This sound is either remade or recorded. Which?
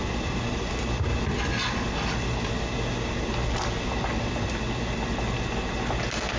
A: recorded